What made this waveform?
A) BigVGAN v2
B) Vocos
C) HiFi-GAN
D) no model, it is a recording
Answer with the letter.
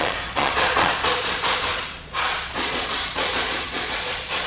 B